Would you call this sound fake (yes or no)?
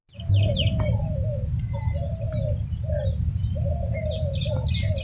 no